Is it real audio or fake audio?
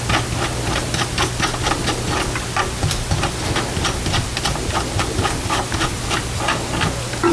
real